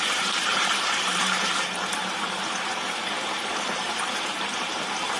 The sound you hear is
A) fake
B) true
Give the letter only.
A